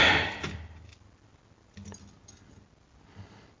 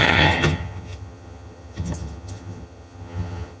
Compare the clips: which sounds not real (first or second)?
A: second